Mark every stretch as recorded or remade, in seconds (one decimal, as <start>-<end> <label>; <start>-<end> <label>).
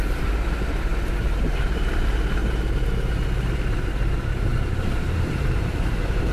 0.0-2.4 remade; 2.4-3.5 recorded; 3.5-6.3 remade